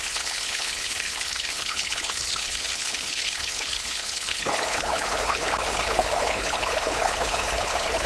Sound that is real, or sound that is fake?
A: fake